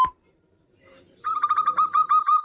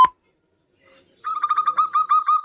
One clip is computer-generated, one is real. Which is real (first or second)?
second